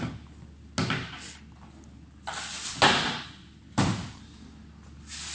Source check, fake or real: real